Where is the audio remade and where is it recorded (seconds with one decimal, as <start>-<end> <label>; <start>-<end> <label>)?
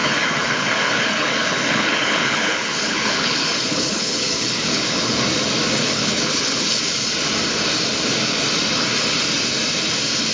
0.0-5.2 remade; 5.2-5.8 recorded; 5.8-6.8 remade; 6.8-10.3 recorded